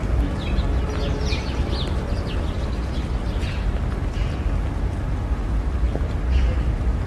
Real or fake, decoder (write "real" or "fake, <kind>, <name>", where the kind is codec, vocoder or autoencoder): real